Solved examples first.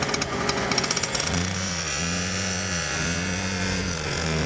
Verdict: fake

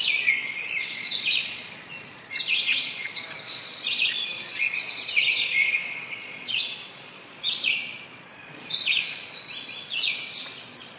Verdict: fake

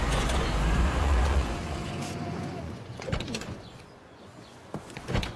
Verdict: fake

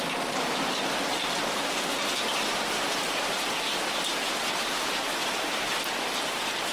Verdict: real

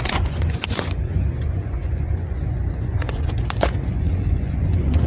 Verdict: fake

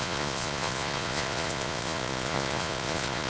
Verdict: fake